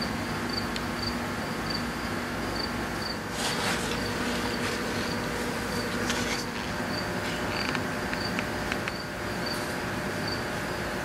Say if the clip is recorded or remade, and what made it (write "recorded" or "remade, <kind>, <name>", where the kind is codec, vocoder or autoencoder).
recorded